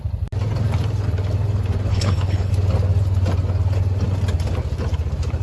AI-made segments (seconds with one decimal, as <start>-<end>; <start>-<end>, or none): 1.9-2.5